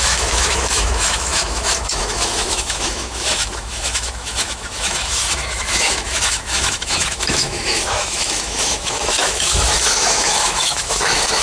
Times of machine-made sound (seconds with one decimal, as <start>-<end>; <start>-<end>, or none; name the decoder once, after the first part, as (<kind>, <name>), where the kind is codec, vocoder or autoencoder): 0.0-11.4 (autoencoder, DAC-VAE)